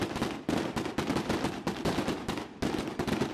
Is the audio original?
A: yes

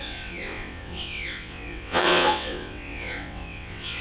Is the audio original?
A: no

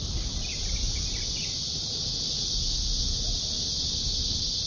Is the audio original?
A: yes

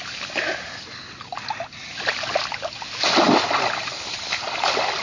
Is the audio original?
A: yes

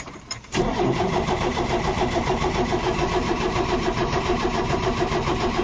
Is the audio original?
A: no